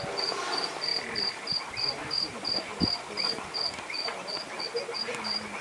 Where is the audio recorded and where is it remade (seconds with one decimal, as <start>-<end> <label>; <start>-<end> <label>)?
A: 0.0-0.9 recorded; 0.9-1.5 remade; 1.5-2.0 recorded; 2.0-4.6 remade; 4.6-5.6 recorded